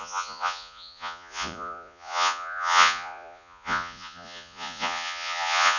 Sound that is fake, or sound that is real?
fake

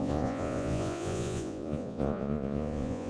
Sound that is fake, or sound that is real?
fake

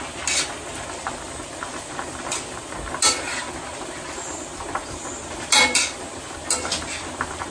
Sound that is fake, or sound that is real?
real